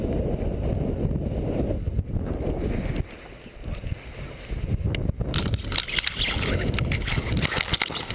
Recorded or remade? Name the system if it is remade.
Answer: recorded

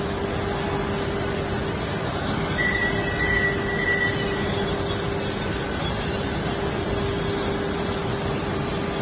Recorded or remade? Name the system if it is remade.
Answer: recorded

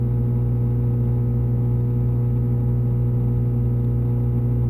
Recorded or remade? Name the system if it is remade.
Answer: recorded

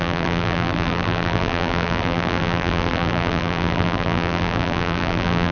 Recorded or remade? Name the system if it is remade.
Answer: remade, vocoder, BigVGAN v2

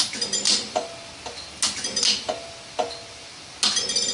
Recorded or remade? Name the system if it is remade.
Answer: recorded